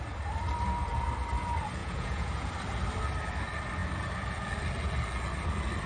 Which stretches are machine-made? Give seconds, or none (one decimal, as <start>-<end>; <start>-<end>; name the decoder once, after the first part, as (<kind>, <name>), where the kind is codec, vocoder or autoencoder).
1.8-2.5 (vocoder, Vocos)